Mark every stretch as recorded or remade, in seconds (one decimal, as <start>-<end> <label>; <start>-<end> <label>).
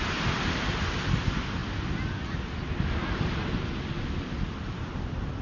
0.0-5.4 recorded